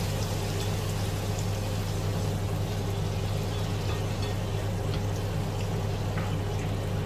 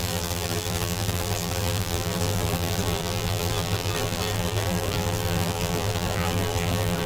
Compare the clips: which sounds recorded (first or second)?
first